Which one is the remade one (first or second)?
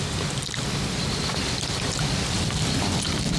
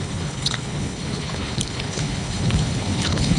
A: second